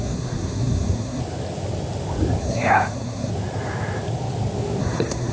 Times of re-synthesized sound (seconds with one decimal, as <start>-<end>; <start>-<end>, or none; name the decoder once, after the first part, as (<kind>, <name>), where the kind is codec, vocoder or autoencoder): 0.0-1.2 (codec, SNAC); 2.4-3.3; 4.8-5.3